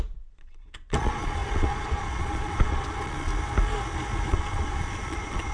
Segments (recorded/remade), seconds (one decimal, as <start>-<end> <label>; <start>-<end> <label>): 0.0-3.3 remade; 3.3-4.3 recorded; 4.3-5.5 remade